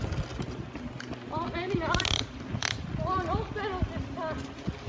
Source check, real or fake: real